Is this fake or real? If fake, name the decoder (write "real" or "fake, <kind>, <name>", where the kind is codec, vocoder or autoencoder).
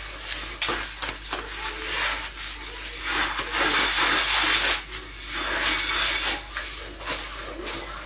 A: real